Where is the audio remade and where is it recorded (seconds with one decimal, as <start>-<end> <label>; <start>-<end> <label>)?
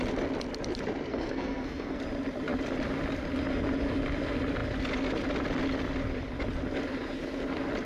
0.0-1.1 recorded; 1.1-2.0 remade; 2.0-7.8 recorded